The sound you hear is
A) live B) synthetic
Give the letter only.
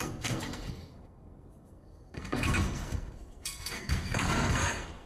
B